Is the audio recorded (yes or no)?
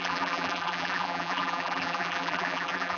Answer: no